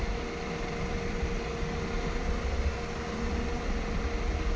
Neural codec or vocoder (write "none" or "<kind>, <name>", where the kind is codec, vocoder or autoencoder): none